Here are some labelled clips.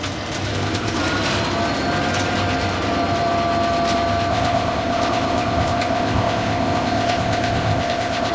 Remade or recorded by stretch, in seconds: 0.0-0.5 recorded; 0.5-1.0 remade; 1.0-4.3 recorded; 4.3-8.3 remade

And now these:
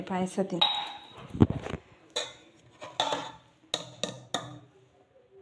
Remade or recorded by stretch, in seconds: 0.0-5.4 recorded

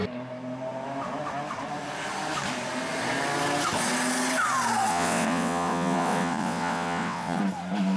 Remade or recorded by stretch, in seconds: 0.0-4.9 recorded; 4.9-7.4 remade; 7.4-8.0 recorded

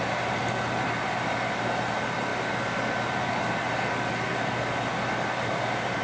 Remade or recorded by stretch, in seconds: 0.0-6.0 recorded

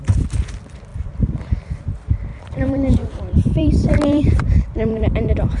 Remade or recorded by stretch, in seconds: 0.0-0.9 recorded; 0.9-1.8 remade; 1.8-2.3 recorded; 2.3-5.6 remade